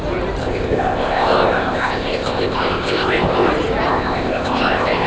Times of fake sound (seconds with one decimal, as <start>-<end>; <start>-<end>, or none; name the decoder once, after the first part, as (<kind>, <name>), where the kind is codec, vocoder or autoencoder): 0.4-3.5 (codec, ZipCodec); 3.9-5.1